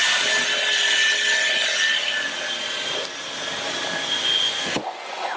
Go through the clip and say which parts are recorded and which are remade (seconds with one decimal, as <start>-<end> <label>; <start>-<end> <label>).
0.0-4.2 recorded; 4.2-5.4 remade